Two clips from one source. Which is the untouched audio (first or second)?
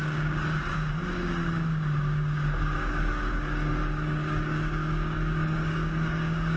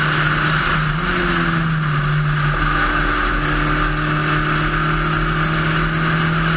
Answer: second